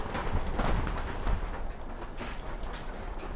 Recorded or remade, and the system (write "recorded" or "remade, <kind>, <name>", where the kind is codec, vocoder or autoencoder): recorded